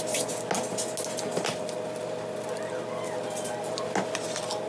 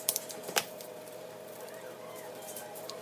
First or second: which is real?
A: first